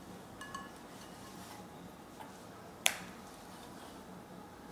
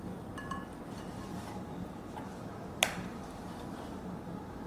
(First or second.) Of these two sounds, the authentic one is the first